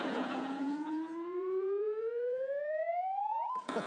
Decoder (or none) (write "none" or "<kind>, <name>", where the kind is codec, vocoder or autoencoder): vocoder, Vocos